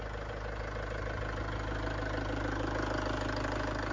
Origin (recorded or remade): recorded